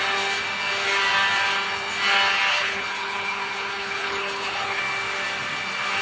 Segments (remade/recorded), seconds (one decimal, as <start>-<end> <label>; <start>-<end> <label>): 0.0-2.5 recorded; 2.5-4.8 remade; 4.8-6.0 recorded